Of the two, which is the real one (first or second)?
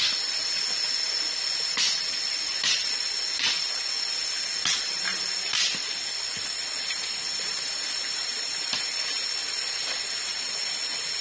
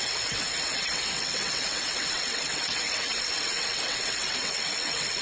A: first